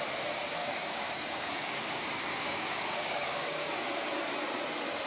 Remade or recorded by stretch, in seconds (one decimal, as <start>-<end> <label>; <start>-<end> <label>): 0.0-0.6 recorded; 0.6-3.7 remade; 3.7-5.1 recorded